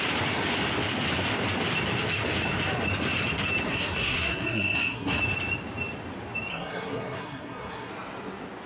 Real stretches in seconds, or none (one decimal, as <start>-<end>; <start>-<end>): 0.0-3.7; 5.2-6.5; 7.9-8.7